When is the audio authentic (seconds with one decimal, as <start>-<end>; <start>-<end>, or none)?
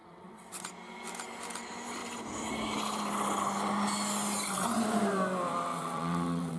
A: 0.6-5.7